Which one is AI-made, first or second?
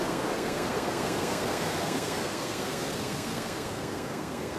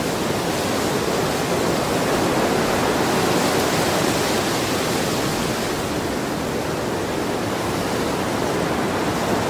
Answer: first